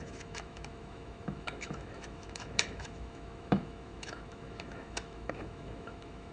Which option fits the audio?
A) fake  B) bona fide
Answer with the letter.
A